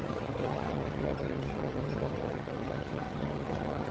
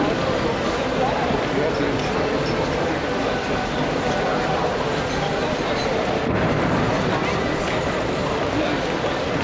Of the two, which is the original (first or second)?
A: second